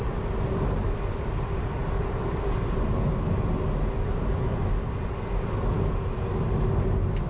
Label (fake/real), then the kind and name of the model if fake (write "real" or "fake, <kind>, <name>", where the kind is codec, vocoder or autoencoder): real